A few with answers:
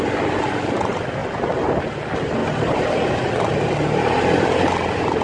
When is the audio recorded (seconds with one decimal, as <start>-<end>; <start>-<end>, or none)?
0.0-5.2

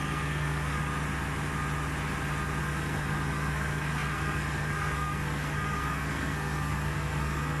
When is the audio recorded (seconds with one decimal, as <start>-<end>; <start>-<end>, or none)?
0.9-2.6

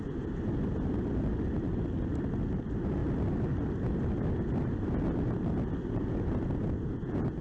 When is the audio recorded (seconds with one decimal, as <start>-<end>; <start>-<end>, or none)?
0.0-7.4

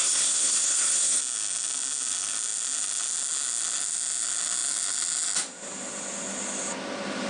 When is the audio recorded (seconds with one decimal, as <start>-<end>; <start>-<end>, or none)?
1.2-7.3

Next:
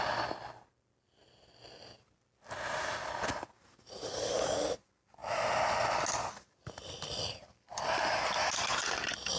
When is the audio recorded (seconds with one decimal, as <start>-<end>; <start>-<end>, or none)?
0.0-9.4

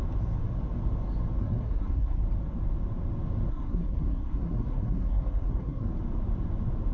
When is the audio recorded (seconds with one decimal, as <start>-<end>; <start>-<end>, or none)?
0.0-1.4; 2.2-3.5; 5.9-6.9

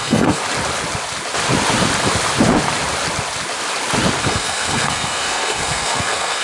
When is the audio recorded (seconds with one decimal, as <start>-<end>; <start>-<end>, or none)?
0.4-4.2